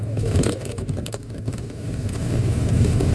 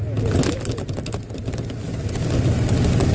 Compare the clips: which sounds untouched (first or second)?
second